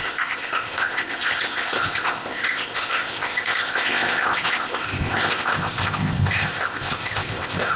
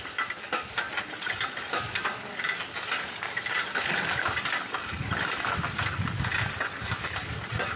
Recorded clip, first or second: second